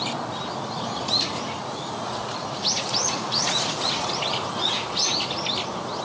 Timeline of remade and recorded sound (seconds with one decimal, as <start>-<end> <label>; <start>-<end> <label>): 0.0-0.5 recorded; 0.5-4.1 remade; 4.1-4.6 recorded; 4.6-5.2 remade; 5.2-6.0 recorded